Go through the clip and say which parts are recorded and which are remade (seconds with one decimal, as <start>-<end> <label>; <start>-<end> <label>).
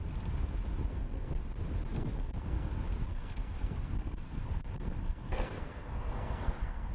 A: 0.0-0.9 recorded; 0.9-1.4 remade; 1.4-1.9 recorded; 1.9-2.7 remade; 2.7-3.1 recorded; 3.1-6.9 remade